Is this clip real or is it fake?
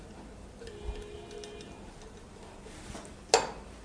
real